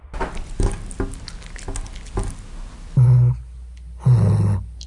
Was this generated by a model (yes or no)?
no